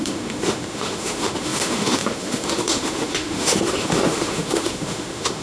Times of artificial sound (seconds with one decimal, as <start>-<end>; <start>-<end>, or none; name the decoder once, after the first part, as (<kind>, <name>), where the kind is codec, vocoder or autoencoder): 0.0-5.4 (autoencoder, DAC-VAE)